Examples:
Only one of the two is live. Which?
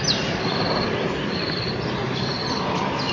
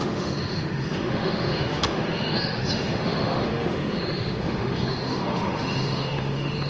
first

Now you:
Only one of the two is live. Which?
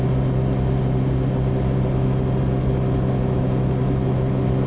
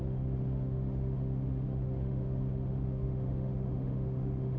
first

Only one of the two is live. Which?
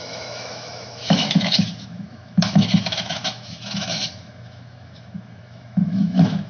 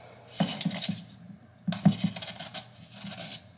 second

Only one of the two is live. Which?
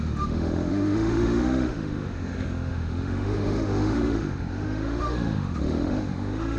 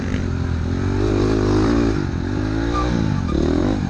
second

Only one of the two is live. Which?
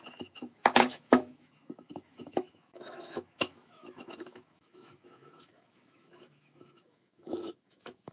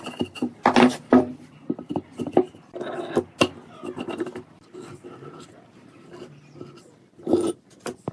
second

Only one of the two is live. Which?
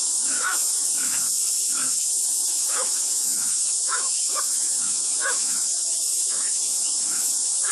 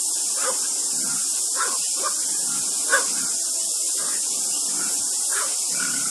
second